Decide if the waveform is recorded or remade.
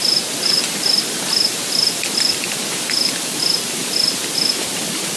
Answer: recorded